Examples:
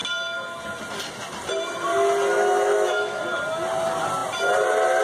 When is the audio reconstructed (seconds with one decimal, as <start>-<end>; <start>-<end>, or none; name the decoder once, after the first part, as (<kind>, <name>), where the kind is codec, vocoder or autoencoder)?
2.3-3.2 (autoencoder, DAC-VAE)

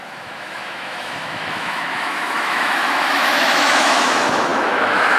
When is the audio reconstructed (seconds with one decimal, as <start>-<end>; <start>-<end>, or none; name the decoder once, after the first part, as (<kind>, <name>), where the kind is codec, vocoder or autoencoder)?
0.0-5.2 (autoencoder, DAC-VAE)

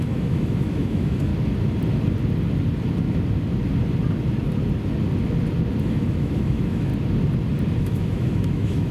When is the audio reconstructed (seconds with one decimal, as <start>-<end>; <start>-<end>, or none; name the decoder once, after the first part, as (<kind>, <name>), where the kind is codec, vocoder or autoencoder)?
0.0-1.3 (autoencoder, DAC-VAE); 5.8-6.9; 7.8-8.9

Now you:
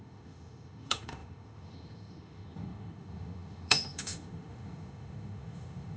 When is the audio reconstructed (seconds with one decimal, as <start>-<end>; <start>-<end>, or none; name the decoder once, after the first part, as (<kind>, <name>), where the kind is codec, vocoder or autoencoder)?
0.0-6.0 (autoencoder, DAC-VAE)

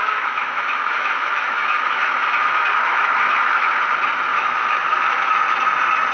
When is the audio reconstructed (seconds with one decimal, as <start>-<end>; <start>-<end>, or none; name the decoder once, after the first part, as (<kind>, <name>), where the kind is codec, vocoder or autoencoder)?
0.0-3.7 (autoencoder, DAC-VAE); 4.3-5.3

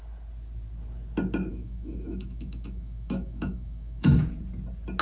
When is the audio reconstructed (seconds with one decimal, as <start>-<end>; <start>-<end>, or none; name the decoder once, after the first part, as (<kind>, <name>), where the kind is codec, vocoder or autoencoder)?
1.5-4.2 (autoencoder, DAC-VAE)

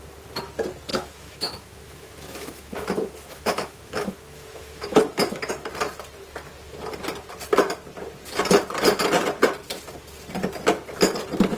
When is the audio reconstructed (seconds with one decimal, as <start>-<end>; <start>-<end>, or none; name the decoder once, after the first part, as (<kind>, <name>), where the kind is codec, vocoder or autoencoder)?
0.9-5.5 (autoencoder, DAC-VAE)

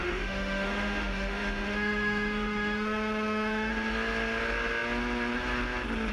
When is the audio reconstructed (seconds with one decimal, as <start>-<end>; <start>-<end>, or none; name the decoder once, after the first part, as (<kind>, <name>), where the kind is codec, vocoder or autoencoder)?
0.0-3.7 (autoencoder, DAC-VAE)